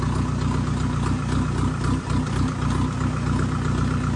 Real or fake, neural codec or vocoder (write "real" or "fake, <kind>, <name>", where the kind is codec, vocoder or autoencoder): real